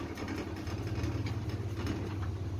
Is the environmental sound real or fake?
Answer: real